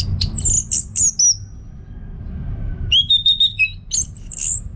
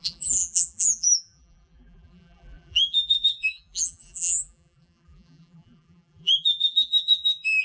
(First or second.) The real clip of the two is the first